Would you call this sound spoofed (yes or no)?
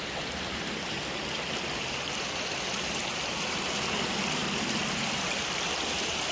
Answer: yes